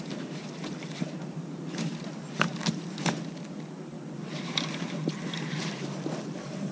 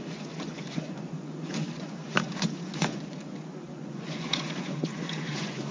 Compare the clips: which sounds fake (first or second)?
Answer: second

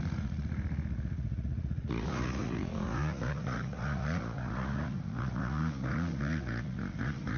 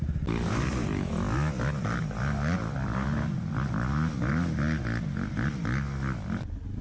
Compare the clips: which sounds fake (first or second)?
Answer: first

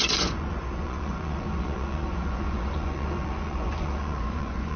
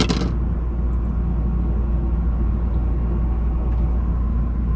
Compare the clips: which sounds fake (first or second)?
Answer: first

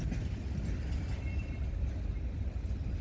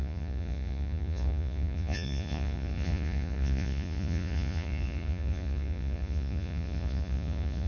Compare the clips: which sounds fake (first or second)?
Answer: second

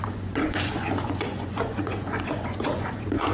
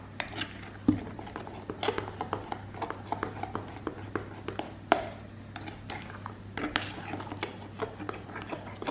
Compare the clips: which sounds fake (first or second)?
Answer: first